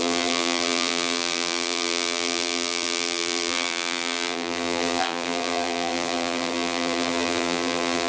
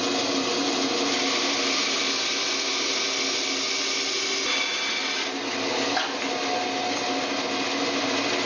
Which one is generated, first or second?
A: first